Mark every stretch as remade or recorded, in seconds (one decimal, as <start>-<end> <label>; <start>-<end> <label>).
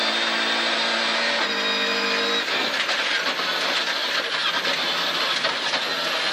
0.0-6.3 recorded